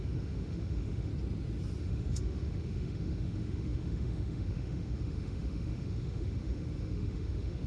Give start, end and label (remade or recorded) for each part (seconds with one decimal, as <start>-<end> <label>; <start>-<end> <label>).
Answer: 0.0-1.1 remade; 1.1-1.8 recorded; 1.8-7.7 remade